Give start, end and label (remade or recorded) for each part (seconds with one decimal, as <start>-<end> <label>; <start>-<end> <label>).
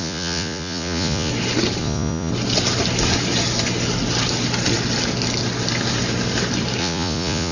0.0-1.3 remade; 1.3-1.8 recorded; 1.8-2.3 remade; 2.3-6.8 recorded; 6.8-7.5 remade